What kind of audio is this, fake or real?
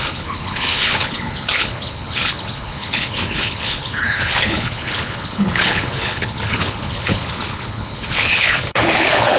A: fake